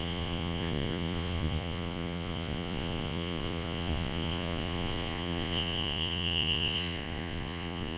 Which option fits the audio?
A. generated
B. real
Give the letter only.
A